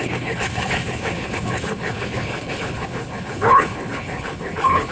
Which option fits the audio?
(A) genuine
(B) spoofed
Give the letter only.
B